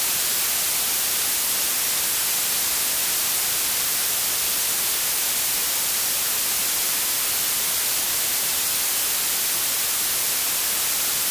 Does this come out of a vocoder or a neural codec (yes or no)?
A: no